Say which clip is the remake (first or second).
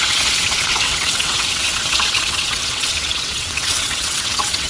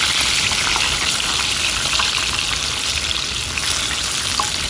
first